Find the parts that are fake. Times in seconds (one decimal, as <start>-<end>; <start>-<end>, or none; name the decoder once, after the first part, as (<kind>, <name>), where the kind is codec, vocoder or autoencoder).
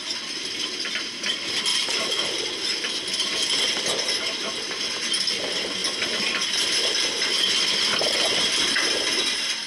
1.7-2.4 (vocoder, BigVGAN v2)